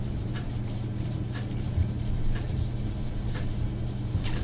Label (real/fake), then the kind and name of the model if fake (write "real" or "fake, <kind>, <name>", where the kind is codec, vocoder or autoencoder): fake, vocoder, BigVGAN v2